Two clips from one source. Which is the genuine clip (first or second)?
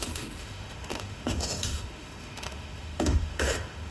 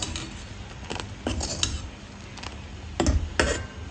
second